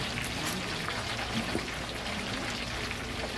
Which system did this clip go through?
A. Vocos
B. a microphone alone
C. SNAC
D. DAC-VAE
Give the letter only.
B